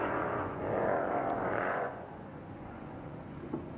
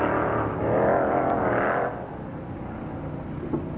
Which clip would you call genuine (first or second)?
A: second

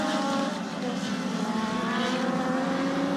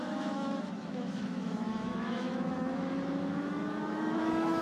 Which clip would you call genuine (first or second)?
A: first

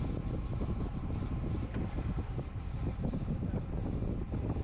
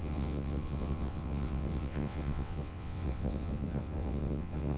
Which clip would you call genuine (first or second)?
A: first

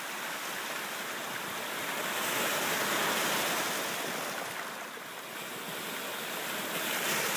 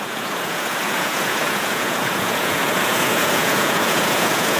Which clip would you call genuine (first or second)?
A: first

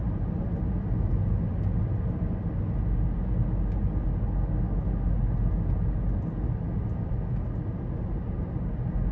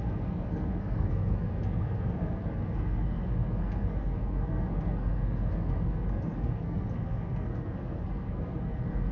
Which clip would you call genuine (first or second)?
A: first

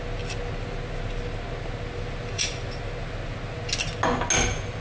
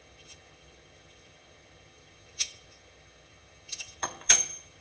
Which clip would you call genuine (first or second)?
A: first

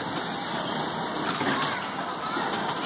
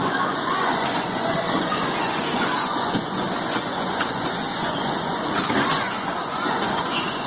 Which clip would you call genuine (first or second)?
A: first